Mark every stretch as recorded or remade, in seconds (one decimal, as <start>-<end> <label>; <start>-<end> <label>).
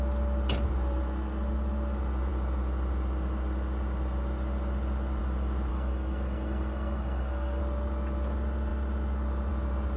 0.0-5.7 recorded; 5.7-7.6 remade; 7.6-10.0 recorded